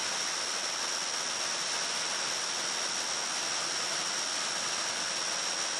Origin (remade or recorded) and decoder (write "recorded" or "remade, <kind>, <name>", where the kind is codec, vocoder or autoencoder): recorded